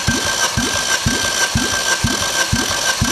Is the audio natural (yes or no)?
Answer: yes